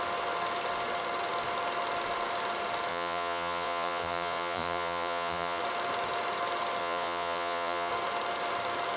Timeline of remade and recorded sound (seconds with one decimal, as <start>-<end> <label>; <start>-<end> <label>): 0.0-2.9 recorded; 2.9-5.6 remade; 5.6-6.8 recorded; 6.8-7.9 remade; 7.9-9.0 recorded